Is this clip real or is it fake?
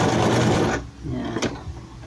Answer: real